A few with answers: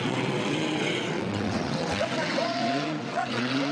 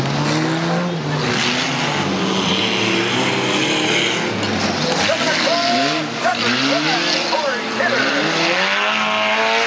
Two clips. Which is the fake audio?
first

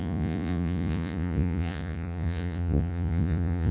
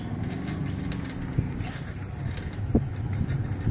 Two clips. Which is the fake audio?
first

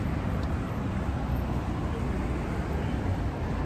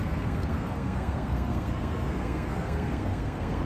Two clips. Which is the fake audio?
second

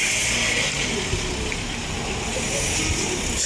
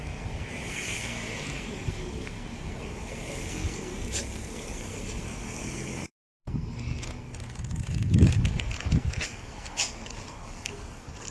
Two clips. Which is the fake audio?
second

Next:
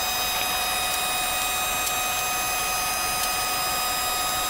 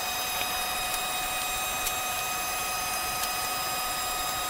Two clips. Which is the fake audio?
second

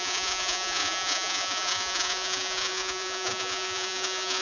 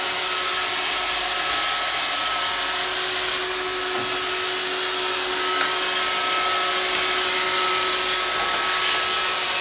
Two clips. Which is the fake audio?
first